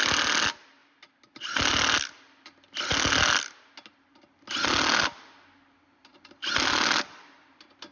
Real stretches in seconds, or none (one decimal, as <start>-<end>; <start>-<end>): 0.0-7.9